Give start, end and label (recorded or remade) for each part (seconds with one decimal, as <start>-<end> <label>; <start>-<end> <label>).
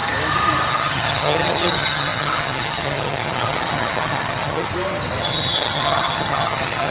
0.0-0.7 recorded; 0.7-4.7 remade; 4.7-5.2 recorded; 5.2-6.9 remade